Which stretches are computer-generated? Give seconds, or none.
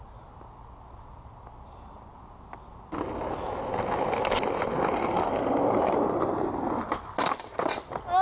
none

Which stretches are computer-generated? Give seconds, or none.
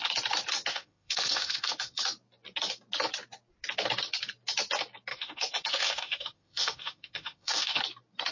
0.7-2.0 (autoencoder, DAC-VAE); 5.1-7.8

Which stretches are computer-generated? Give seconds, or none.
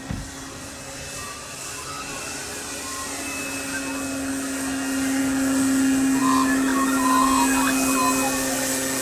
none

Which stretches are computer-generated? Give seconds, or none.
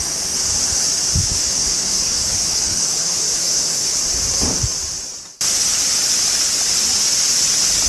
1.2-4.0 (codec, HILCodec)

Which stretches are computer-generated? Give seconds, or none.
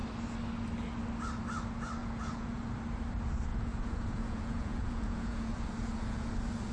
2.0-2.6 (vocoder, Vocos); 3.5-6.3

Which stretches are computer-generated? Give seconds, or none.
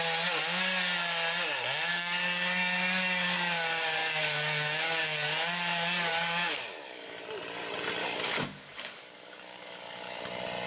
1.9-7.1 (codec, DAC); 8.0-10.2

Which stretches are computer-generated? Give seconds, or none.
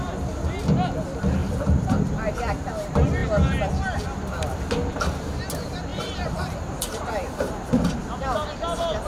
1.4-2.3 (vocoder, BigVGAN v2); 5.9-7.7